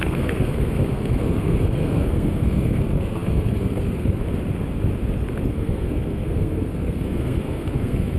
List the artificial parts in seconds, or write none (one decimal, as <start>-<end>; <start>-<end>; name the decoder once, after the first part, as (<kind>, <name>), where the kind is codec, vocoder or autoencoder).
0.0-4.2 (codec, SNAC); 5.5-8.2